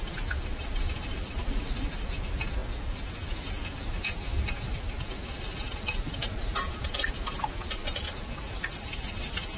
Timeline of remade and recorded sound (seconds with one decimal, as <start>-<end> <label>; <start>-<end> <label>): 0.0-0.6 recorded; 0.6-1.6 remade; 1.6-4.3 recorded; 4.3-7.1 remade; 7.1-7.8 recorded; 7.8-9.0 remade; 9.0-9.6 recorded